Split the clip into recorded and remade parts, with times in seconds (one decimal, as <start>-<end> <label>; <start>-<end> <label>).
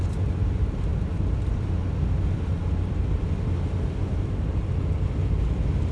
0.0-5.9 recorded